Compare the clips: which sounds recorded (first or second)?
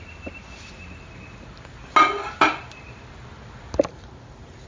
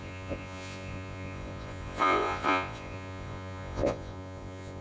first